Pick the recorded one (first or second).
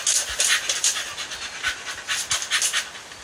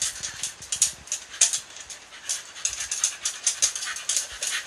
first